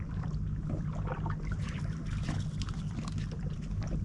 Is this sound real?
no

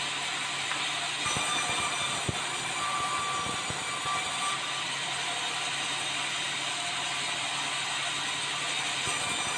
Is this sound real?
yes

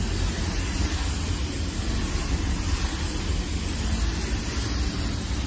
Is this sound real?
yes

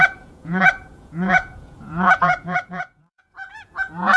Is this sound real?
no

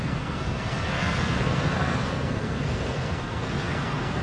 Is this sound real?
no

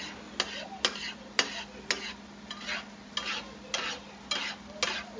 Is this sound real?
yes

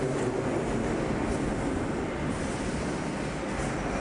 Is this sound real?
yes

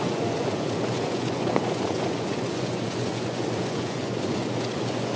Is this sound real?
no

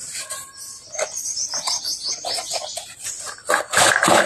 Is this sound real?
yes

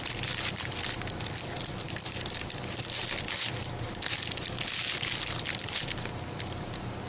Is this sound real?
yes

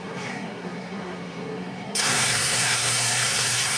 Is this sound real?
no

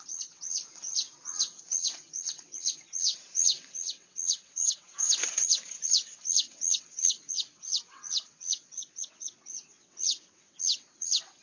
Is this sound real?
no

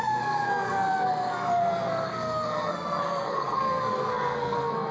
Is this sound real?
no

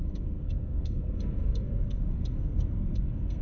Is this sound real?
no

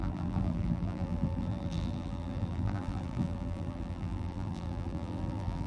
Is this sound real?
no